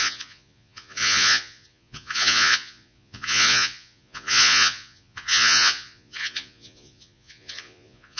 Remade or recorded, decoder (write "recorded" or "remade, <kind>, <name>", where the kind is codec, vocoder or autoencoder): remade, vocoder, Vocos